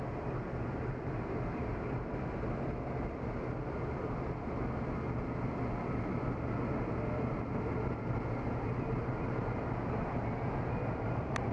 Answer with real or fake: real